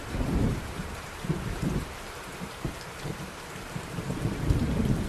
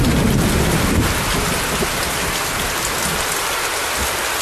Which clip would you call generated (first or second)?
first